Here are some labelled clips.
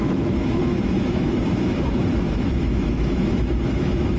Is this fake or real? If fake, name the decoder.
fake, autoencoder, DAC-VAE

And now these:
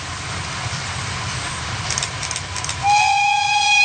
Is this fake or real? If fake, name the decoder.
real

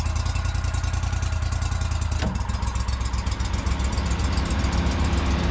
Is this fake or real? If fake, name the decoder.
real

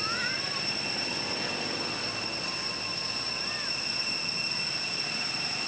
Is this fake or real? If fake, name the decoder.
real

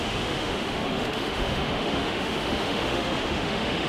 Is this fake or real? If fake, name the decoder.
fake, autoencoder, DAC-VAE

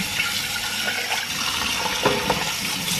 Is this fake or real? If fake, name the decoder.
real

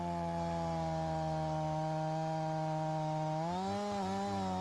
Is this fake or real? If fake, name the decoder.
real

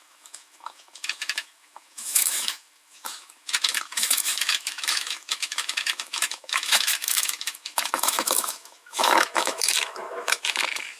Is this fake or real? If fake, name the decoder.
fake, autoencoder, DAC-VAE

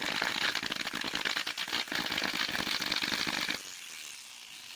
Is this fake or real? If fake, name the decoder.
real